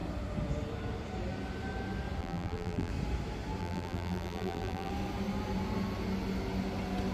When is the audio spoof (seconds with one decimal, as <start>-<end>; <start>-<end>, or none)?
2.2-2.9; 3.6-4.9